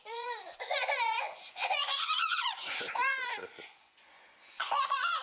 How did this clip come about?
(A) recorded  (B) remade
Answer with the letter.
B